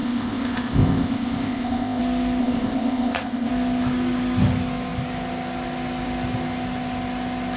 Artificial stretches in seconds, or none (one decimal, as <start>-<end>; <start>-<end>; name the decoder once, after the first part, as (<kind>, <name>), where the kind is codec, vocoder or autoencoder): 0.0-2.0 (codec, ZipCodec); 2.4-3.5